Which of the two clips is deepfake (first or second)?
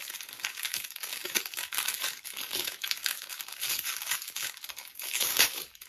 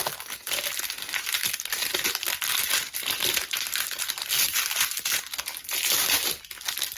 first